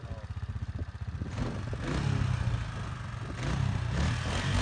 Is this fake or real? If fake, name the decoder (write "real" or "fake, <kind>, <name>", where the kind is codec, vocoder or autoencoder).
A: real